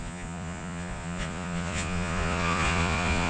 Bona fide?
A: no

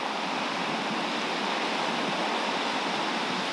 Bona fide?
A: yes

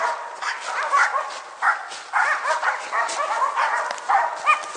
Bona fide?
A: yes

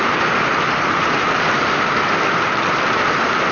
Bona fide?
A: yes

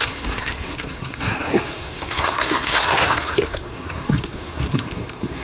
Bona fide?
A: no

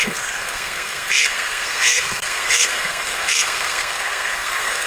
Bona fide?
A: no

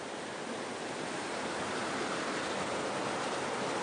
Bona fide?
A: yes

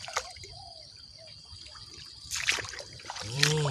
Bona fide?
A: no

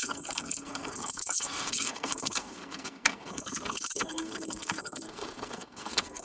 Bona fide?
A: no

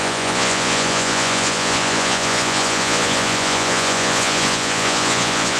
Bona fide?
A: no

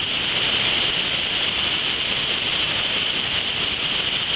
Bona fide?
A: yes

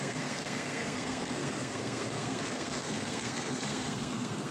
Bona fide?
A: no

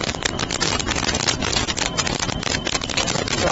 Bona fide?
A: yes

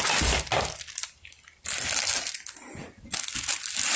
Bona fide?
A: yes